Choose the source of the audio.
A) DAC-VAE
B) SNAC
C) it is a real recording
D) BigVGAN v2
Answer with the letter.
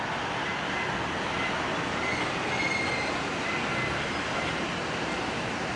C